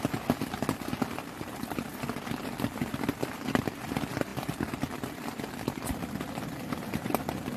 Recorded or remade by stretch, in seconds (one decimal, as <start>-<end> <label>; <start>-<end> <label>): 0.0-7.6 recorded